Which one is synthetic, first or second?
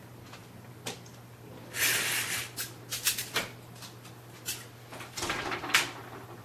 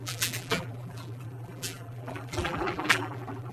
second